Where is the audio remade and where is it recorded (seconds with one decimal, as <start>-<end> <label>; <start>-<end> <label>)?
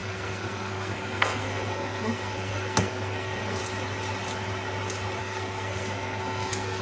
0.0-3.6 remade; 3.6-5.2 recorded; 5.2-6.8 remade